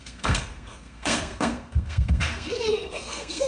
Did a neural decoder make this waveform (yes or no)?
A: yes